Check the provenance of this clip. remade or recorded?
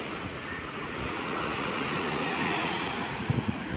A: remade